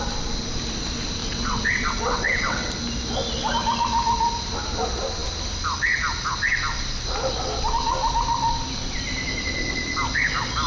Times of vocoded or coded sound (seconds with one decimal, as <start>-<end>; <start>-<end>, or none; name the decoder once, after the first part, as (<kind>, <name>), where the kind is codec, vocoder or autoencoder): 1.2-2.7 (vocoder, WaveNeXt)